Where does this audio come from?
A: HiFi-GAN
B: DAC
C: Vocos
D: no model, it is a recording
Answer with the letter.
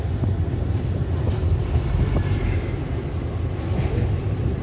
D